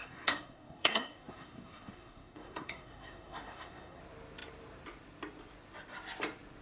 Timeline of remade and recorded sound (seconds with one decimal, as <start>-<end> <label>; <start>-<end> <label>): 0.0-4.0 remade; 4.0-6.6 recorded